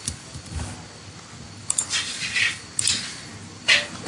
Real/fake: real